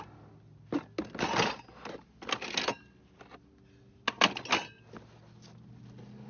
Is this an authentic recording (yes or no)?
yes